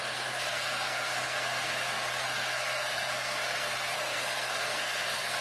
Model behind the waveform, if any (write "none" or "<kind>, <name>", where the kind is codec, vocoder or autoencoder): codec, SNAC